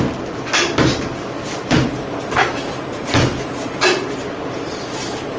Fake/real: real